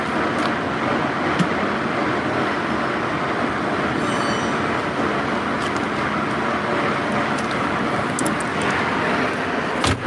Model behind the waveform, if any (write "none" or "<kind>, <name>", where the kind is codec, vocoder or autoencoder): none